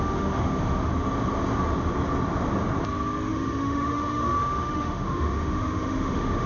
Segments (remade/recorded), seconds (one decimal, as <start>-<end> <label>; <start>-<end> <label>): 0.0-0.9 remade; 0.9-3.3 recorded; 3.3-6.5 remade